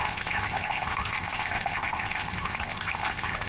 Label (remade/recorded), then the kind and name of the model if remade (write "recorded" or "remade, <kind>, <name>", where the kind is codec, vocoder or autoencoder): remade, codec, ZipCodec